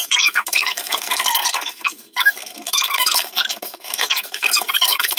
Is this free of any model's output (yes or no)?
no